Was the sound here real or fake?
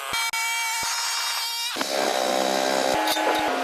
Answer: real